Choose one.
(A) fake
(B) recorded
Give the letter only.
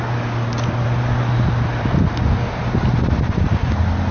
B